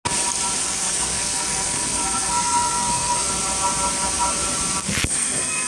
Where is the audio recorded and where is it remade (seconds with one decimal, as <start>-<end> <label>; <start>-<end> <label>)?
0.0-0.6 recorded; 0.6-3.3 remade; 3.3-5.0 recorded; 5.0-5.7 remade